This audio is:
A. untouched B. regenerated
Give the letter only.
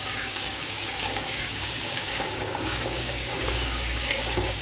B